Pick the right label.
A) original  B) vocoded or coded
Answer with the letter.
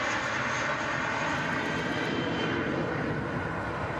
A